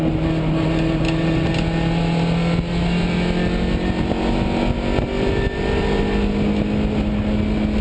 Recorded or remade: recorded